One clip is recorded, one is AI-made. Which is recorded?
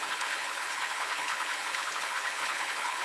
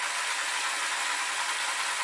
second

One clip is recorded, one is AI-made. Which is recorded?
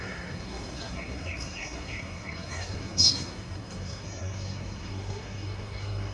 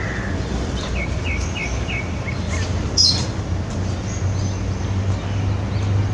second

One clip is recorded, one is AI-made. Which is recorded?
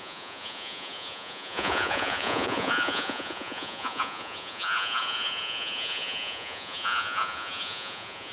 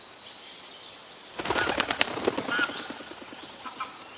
second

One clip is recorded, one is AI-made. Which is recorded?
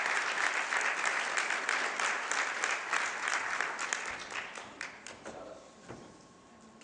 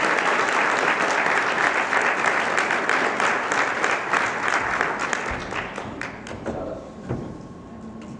second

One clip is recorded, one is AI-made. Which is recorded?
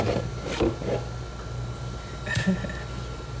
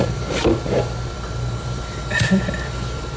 first